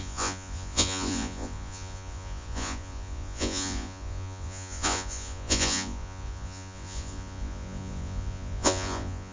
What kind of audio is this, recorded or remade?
remade